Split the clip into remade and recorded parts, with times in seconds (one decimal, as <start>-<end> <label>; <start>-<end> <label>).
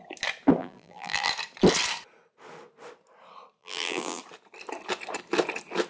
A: 0.0-0.6 recorded; 0.6-1.3 remade; 1.3-3.6 recorded; 3.6-4.2 remade; 4.2-5.9 recorded